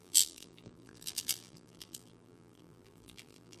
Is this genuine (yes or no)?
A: no